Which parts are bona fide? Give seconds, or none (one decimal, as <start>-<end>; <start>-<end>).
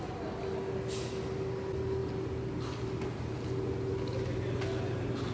0.0-5.3